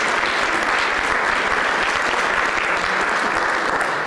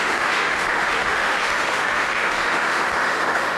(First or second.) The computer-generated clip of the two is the second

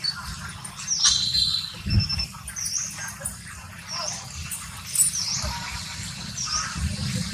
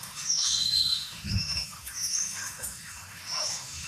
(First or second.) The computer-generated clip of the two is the second